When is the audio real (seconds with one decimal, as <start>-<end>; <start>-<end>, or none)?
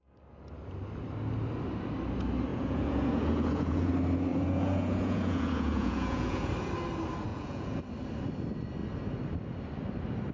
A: 0.0-2.5; 3.9-4.3; 6.5-7.3; 7.8-10.3